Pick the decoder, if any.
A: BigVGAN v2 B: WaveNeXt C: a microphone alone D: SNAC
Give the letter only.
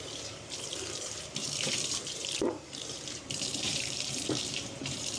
A